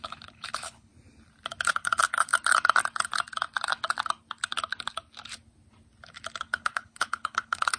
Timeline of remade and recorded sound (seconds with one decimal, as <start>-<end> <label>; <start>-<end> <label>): 0.0-0.9 remade; 0.9-1.7 recorded; 1.7-2.3 remade; 2.3-6.4 recorded; 6.4-7.8 remade